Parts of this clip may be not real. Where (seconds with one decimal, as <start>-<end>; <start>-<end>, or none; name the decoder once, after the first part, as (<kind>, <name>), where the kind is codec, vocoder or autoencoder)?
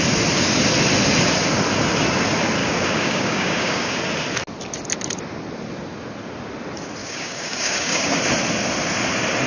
2.6-4.0 (codec, DAC); 7.0-8.2